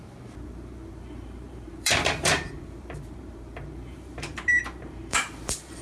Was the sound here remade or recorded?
remade